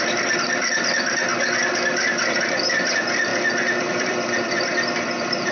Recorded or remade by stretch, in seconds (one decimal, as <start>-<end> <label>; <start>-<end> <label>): 0.0-1.3 remade; 1.3-2.1 recorded; 2.1-3.3 remade; 3.3-3.9 recorded; 3.9-5.5 remade